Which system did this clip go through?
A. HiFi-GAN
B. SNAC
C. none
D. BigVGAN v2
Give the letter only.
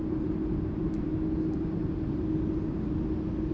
C